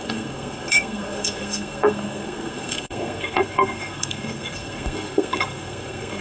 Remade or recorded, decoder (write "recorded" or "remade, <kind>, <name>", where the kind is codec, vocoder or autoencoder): remade, codec, SNAC